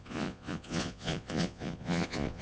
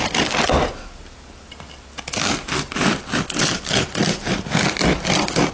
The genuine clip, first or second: second